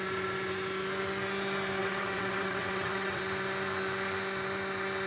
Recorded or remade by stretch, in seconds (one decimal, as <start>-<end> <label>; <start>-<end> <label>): 0.0-1.8 recorded; 1.8-3.2 remade; 3.2-5.1 recorded